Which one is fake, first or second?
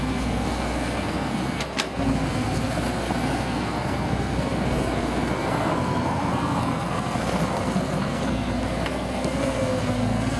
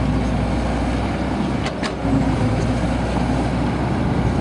first